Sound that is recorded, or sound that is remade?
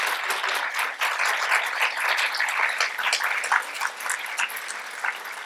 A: recorded